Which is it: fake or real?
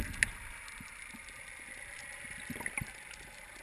real